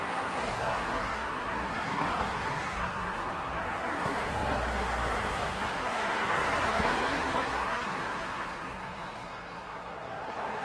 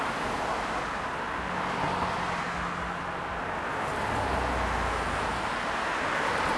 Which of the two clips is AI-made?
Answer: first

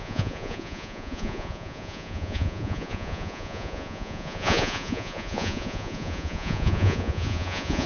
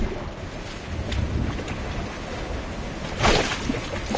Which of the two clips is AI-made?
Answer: first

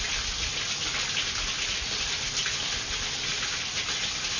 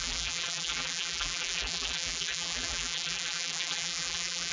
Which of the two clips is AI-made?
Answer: second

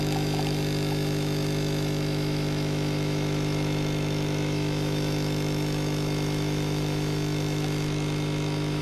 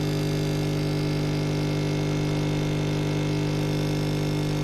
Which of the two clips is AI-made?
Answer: first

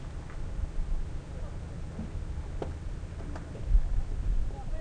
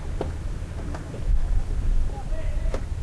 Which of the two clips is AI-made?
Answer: second